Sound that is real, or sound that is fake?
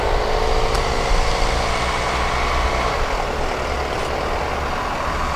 real